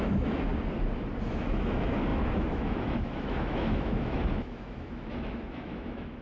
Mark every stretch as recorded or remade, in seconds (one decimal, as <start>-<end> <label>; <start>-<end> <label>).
0.0-0.5 remade; 0.5-1.3 recorded; 1.3-6.2 remade